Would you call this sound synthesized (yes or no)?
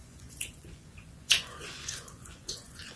yes